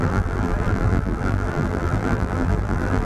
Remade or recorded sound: remade